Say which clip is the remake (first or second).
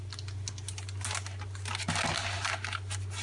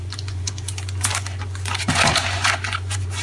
second